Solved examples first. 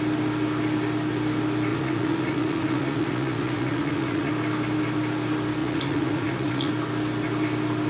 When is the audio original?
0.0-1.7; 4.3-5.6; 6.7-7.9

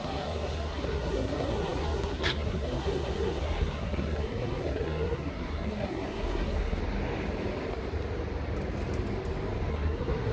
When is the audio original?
6.8-9.7

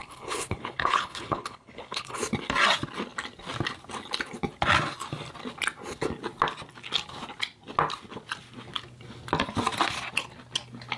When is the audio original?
2.2-11.0